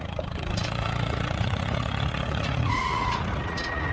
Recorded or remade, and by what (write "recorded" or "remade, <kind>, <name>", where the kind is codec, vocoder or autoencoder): remade, vocoder, Vocos